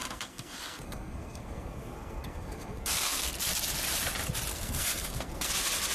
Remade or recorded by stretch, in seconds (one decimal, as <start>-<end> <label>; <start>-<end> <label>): 0.0-3.3 remade; 3.3-4.5 recorded; 4.5-5.5 remade; 5.5-5.9 recorded